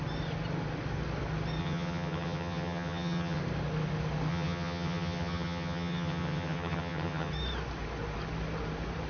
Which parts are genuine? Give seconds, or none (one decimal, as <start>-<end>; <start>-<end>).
0.0-1.6; 3.4-4.3; 7.3-9.1